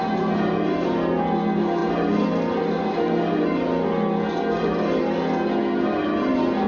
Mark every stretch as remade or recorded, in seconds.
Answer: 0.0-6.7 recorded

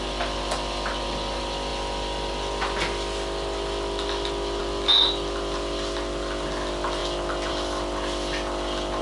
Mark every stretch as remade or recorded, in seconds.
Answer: 0.0-9.0 recorded

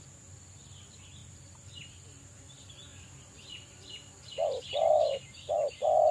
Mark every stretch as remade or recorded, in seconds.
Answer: 0.0-1.2 recorded; 1.2-1.9 remade; 1.9-2.9 recorded; 2.9-4.9 remade; 4.9-6.1 recorded

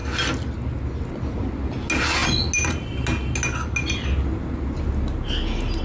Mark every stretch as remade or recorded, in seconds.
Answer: 0.0-5.8 recorded